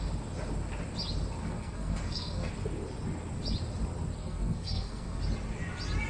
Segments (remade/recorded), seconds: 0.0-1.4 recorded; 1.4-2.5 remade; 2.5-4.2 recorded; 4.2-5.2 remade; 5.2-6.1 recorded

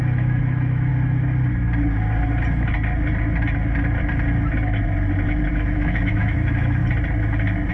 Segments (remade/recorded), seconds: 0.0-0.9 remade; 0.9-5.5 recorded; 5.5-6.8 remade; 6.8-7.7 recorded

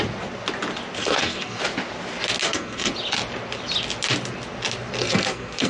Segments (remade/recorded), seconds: 0.0-1.0 recorded; 1.0-1.6 remade; 1.6-2.4 recorded; 2.4-2.9 remade; 2.9-5.0 recorded; 5.0-5.7 remade

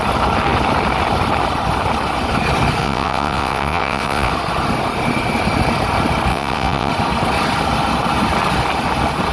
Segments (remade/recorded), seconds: 0.0-2.8 recorded; 2.8-4.3 remade; 4.3-6.3 recorded; 6.3-6.9 remade; 6.9-9.3 recorded

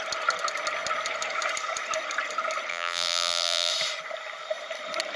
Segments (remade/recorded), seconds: 0.0-2.7 recorded; 2.7-3.7 remade; 3.7-5.2 recorded

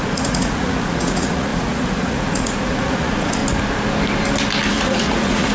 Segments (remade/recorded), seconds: 0.0-3.4 remade; 3.4-4.7 recorded; 4.7-5.5 remade